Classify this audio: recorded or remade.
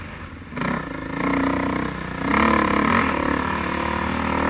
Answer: recorded